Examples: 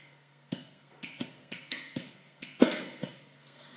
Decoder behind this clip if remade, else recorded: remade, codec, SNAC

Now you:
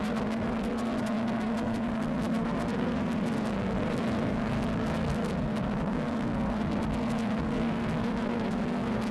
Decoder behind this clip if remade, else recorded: remade, codec, SNAC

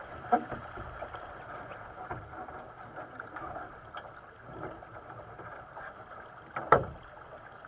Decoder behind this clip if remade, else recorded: recorded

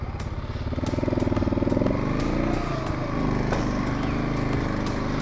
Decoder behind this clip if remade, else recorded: recorded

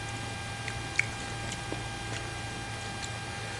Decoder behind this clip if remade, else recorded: recorded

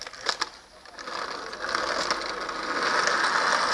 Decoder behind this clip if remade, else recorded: recorded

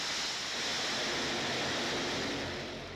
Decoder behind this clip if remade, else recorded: recorded